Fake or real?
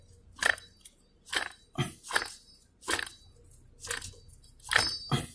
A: real